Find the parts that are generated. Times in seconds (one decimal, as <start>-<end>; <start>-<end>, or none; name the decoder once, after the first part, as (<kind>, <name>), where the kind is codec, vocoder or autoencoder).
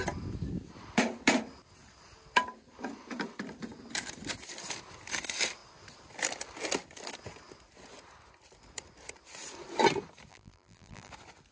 10.3-11.1 (vocoder, BigVGAN v2)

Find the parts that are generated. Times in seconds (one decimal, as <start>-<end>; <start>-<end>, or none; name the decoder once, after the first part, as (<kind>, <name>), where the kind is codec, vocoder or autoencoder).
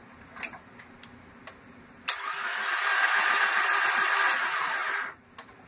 none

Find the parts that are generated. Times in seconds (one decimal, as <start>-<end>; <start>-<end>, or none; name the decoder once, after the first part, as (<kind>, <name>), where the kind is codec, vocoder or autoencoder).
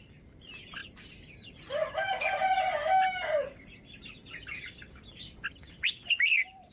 0.0-0.8 (vocoder, BigVGAN v2); 1.8-2.7; 3.4-6.7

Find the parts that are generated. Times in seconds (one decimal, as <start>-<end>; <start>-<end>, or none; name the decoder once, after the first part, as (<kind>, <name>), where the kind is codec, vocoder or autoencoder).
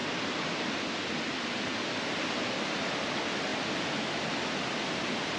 0.0-2.3 (vocoder, BigVGAN v2); 3.5-4.3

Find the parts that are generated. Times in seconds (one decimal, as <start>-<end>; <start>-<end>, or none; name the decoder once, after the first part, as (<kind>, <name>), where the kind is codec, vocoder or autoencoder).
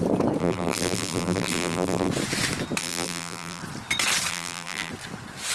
0.4-2.1 (vocoder, BigVGAN v2); 2.8-3.6; 4.3-4.9